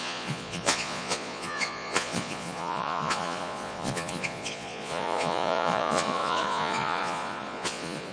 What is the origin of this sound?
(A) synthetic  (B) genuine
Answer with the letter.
A